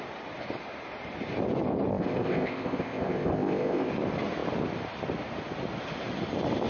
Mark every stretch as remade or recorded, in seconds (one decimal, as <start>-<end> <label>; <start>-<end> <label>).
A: 0.0-1.9 recorded; 1.9-3.9 remade; 3.9-6.7 recorded